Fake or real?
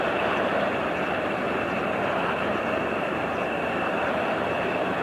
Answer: fake